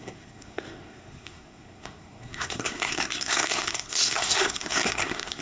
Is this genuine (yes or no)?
no